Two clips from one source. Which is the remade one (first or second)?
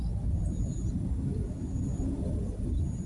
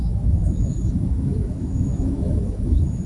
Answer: second